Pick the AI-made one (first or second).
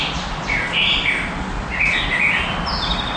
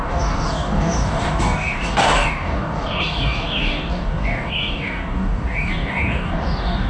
second